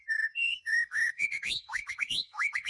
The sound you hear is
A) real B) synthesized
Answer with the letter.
B